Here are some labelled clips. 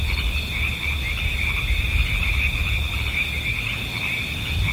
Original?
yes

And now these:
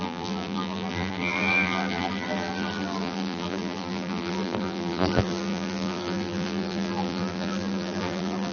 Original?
no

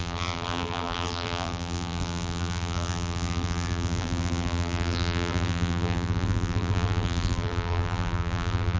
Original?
no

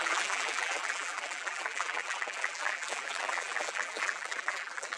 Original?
no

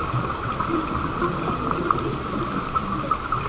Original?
yes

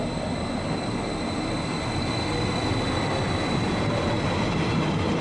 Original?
yes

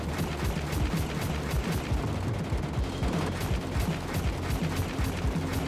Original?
yes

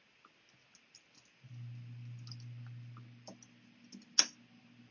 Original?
yes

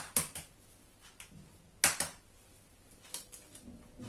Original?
yes